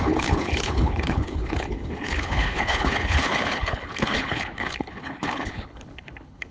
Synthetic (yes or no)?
yes